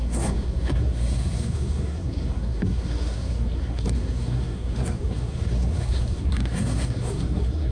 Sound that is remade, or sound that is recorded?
remade